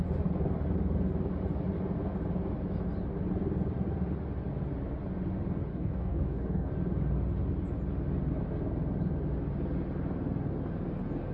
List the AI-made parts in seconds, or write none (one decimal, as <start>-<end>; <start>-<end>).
5.7-6.7